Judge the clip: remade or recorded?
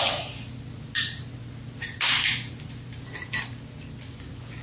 recorded